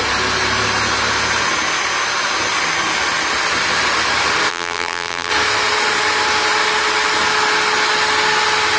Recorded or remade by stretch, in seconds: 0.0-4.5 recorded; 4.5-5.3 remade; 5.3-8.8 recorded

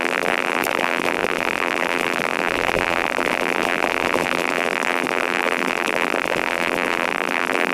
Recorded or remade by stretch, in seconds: 0.0-7.7 remade

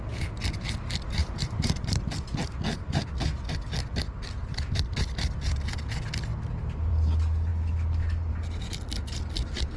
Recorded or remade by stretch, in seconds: 0.0-1.2 recorded; 1.2-2.0 remade; 2.0-4.4 recorded; 4.4-5.0 remade; 5.0-9.8 recorded

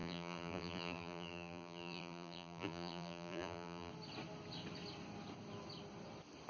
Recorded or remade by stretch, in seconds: 0.0-3.9 remade; 3.9-6.5 recorded

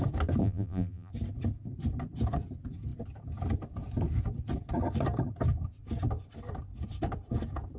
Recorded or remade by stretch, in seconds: 0.0-0.4 recorded; 0.4-1.1 remade; 1.1-7.8 recorded